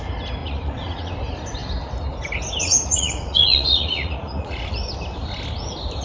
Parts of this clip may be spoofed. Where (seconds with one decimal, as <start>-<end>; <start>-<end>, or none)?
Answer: 0.4-1.1; 2.6-4.7